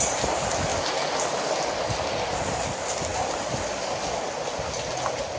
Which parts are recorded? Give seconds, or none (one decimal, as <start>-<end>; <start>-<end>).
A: 0.0-5.4